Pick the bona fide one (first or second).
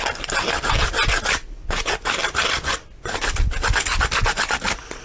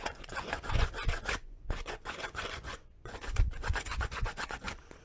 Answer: first